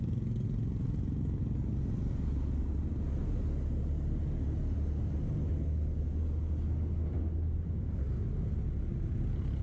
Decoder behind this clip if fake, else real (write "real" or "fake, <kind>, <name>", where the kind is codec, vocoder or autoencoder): real